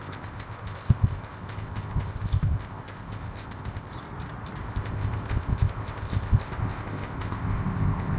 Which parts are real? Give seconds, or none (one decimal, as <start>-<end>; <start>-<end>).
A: 3.9-4.6